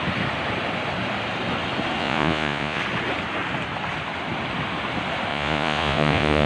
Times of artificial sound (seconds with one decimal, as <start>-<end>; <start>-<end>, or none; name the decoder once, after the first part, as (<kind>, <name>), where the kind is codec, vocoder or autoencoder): 2.0-2.8 (vocoder, Vocos); 5.3-6.5